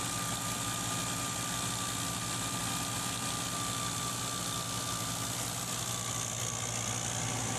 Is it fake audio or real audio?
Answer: real